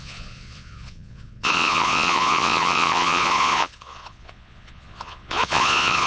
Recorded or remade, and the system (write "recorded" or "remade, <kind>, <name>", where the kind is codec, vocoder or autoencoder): remade, vocoder, Vocos